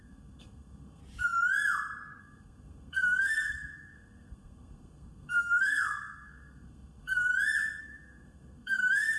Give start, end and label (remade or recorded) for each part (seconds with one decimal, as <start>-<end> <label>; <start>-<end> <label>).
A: 0.0-1.0 remade; 1.0-2.2 recorded; 2.2-7.3 remade; 7.3-7.8 recorded; 7.8-9.2 remade